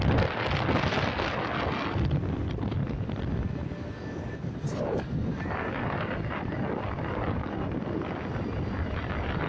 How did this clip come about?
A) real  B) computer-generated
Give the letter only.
A